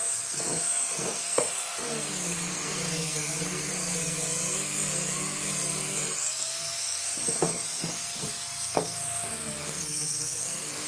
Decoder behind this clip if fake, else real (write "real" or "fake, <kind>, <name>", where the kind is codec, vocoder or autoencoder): fake, codec, SNAC